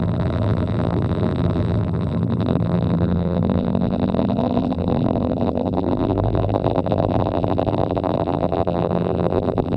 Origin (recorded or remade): remade